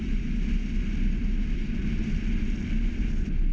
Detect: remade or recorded recorded